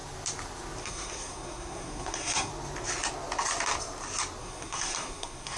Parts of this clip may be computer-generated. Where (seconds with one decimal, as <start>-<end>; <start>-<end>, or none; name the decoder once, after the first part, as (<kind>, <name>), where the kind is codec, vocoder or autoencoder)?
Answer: 0.8-2.5 (codec, SNAC); 4.4-5.6